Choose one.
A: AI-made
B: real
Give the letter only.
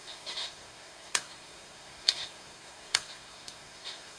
A